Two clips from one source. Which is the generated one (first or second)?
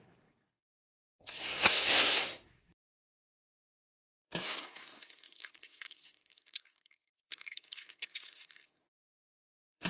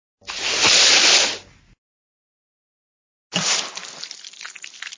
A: first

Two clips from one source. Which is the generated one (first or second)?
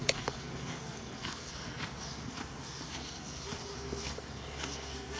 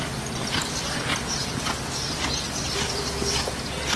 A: first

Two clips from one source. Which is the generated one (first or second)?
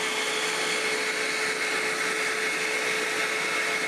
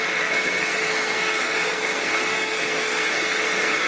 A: second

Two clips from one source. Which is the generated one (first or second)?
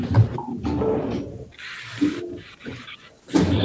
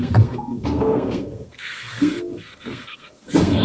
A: second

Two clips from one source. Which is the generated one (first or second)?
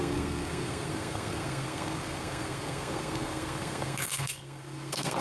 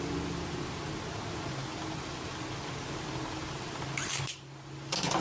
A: first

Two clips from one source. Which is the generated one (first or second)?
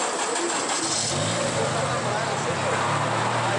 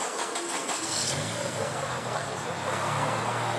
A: second